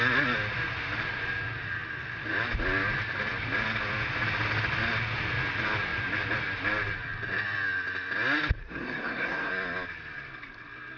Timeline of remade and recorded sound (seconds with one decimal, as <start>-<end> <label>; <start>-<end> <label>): 0.0-8.6 recorded; 8.6-9.5 remade; 9.5-11.0 recorded